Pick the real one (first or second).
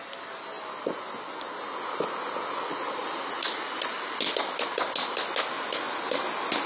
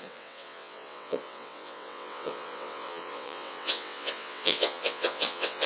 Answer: first